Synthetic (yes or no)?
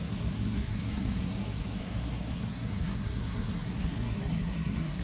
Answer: yes